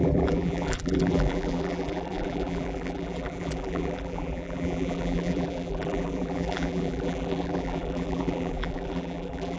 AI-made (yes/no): yes